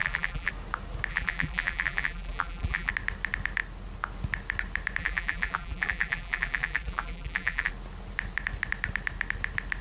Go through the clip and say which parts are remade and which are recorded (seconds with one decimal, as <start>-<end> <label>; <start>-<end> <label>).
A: 0.0-0.5 remade; 0.5-1.1 recorded; 1.1-2.9 remade; 2.9-5.0 recorded; 5.0-7.7 remade; 7.7-9.8 recorded